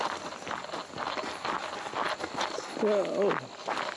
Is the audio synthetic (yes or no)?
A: no